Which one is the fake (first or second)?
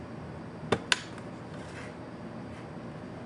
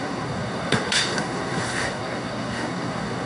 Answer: second